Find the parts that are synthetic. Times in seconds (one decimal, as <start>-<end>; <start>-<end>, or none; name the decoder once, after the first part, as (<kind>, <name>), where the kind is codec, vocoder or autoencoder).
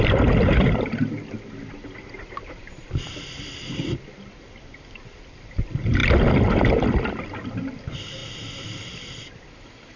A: none